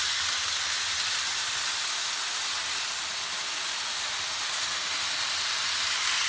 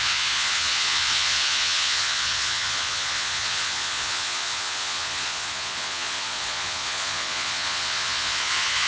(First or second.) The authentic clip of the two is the first